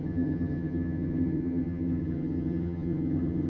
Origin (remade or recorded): remade